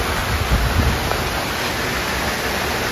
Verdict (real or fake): real